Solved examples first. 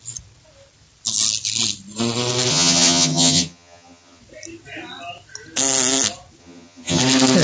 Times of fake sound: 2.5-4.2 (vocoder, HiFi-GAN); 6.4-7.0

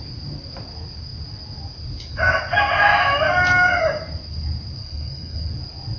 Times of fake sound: 4.8-5.5 (codec, SNAC)

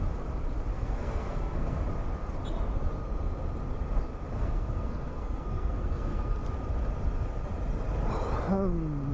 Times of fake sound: 0.7-1.8 (codec, SNAC); 4.3-6.4